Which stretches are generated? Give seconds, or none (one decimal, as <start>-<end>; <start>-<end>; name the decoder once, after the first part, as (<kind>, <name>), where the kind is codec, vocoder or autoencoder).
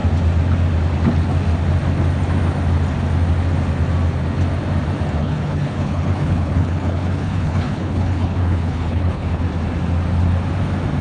5.2-9.4 (codec, HILCodec)